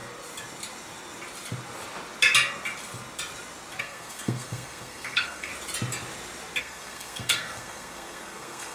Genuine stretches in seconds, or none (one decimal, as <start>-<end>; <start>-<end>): 0.0-3.8; 5.5-6.6